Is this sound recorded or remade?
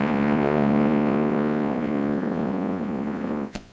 remade